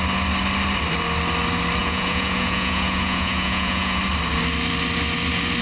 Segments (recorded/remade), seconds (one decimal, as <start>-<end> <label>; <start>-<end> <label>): 0.0-1.8 recorded; 1.8-4.0 remade; 4.0-5.6 recorded